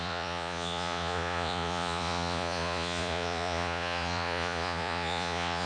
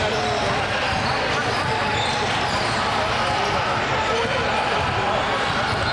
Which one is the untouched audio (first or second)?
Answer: second